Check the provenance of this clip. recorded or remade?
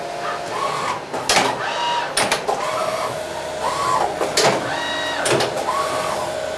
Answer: recorded